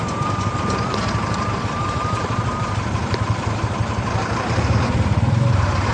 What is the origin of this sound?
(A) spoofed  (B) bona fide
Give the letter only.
A